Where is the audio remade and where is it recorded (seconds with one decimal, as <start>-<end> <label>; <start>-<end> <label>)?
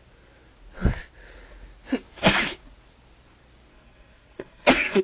0.0-3.7 recorded; 3.7-5.0 remade